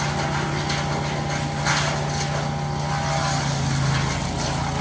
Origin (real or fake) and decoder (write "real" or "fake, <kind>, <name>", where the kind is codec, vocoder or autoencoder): real